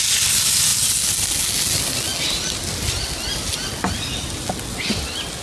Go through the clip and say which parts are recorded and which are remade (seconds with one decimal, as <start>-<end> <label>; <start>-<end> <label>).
0.0-5.4 recorded